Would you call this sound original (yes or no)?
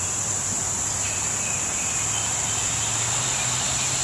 yes